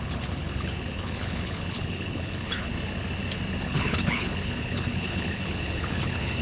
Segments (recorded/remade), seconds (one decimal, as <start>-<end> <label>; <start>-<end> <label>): 0.0-2.7 remade; 2.7-3.6 recorded; 3.6-6.4 remade

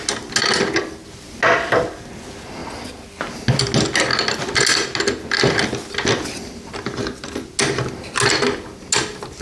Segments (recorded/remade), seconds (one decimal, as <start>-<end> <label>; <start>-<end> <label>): 0.0-9.4 recorded

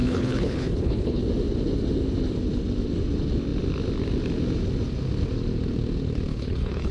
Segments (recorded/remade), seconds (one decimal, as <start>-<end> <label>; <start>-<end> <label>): 0.0-1.2 remade; 1.2-6.3 recorded; 6.3-6.9 remade

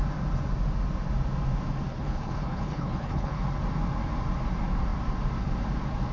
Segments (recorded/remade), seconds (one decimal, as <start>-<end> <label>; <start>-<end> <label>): 0.0-1.9 recorded; 1.9-3.4 remade; 3.4-6.1 recorded

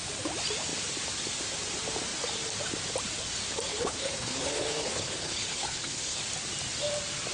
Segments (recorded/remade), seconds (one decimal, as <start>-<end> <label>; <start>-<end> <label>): 0.0-3.7 recorded; 3.7-6.2 remade; 6.2-7.3 recorded